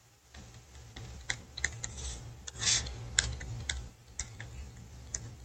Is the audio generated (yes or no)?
no